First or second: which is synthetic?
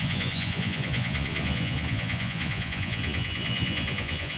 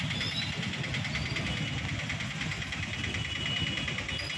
first